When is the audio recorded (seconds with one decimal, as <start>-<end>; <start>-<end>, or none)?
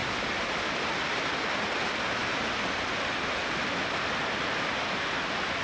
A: 0.0-5.6